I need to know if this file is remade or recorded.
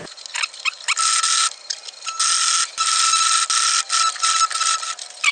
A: recorded